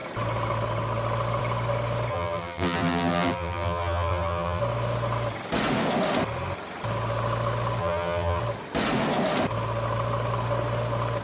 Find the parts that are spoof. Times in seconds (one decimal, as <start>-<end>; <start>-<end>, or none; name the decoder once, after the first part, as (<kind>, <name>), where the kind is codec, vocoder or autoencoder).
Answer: 2.1-4.6 (vocoder, BigVGAN v2); 7.8-8.4